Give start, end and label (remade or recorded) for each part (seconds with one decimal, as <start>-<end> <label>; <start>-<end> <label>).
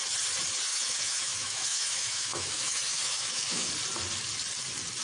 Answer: 0.0-0.7 recorded; 0.7-3.7 remade; 3.7-5.0 recorded